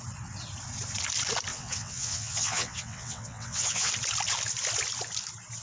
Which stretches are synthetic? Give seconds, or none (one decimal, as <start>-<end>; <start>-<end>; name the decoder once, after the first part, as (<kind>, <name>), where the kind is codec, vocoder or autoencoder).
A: 1.5-3.9 (vocoder, WaveNeXt)